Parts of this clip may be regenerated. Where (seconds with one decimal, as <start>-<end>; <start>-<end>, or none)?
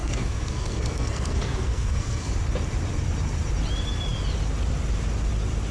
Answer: 0.0-2.3